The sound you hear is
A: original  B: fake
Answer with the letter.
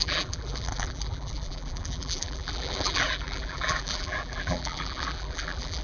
B